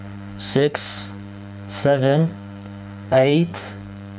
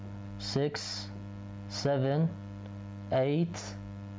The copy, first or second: first